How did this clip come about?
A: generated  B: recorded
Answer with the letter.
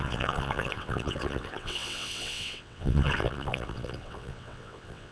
A